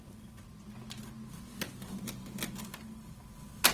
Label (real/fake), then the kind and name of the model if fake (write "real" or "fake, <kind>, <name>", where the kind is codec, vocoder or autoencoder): real